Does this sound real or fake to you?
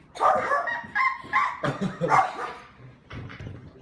real